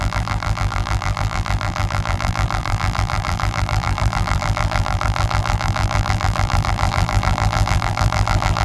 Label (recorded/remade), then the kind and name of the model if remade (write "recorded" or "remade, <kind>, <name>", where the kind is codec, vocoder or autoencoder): remade, vocoder, BigVGAN v2